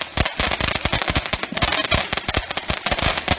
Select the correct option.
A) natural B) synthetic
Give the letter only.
A